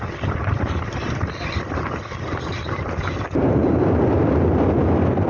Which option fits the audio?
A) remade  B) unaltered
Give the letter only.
A